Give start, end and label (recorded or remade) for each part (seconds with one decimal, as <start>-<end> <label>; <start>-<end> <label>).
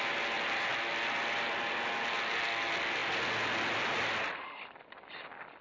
0.0-5.6 recorded